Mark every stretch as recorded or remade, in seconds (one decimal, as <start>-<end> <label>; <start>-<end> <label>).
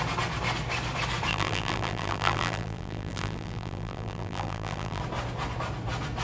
0.0-1.3 recorded; 1.3-5.0 remade; 5.0-6.2 recorded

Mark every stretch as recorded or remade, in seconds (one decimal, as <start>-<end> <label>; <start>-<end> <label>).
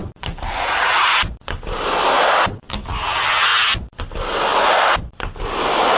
0.0-6.0 recorded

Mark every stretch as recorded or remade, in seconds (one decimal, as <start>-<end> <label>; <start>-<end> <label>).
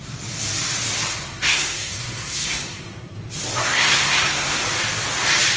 0.0-1.1 recorded; 1.1-3.2 remade; 3.2-3.6 recorded; 3.6-4.6 remade; 4.6-5.6 recorded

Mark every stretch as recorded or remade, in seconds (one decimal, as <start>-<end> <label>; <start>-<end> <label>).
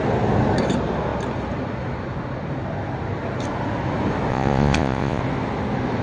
0.0-4.3 recorded; 4.3-5.2 remade; 5.2-6.0 recorded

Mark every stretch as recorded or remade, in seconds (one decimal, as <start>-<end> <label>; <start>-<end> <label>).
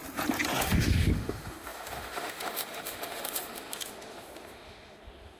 0.0-0.6 recorded; 0.6-5.4 remade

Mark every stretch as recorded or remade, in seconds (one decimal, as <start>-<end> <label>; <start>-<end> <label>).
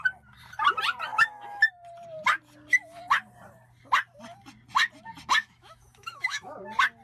0.0-1.1 recorded; 1.1-1.7 remade; 1.7-5.4 recorded; 5.4-6.6 remade; 6.6-7.0 recorded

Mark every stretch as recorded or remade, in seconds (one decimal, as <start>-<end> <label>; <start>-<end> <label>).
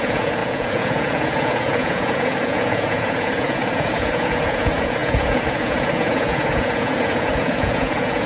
0.0-8.3 remade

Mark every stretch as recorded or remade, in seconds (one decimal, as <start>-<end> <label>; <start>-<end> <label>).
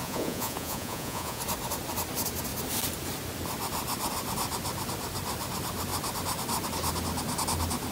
0.0-1.4 remade; 1.4-7.9 recorded